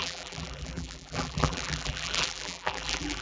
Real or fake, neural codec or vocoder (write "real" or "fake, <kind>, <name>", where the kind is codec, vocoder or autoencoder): fake, vocoder, BigVGAN v2